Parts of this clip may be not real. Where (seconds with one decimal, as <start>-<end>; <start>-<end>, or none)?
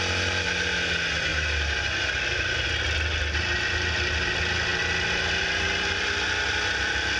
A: none